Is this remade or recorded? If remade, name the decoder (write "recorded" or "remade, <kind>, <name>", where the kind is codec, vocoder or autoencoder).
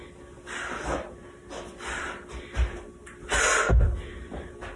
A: recorded